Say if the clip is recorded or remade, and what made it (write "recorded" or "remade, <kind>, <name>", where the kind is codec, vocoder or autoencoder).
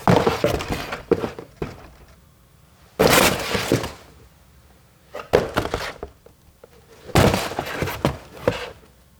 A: recorded